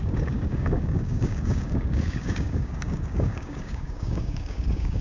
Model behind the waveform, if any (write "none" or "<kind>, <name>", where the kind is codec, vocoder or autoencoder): codec, DAC